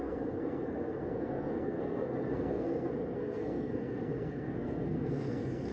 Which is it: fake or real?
fake